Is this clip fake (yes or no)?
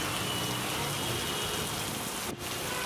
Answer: no